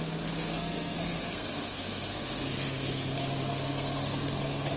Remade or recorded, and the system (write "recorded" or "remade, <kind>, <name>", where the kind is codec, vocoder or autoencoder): remade, codec, SNAC